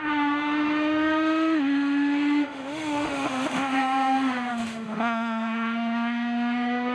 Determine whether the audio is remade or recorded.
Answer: remade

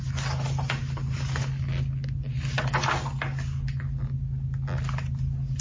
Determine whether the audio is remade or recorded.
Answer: recorded